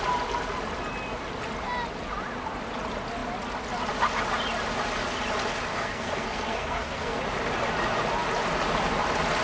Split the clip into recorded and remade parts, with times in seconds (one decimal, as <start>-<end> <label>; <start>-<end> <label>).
0.0-5.7 recorded; 5.7-7.2 remade; 7.2-9.4 recorded